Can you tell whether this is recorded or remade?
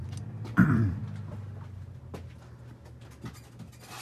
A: recorded